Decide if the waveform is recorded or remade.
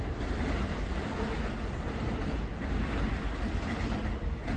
recorded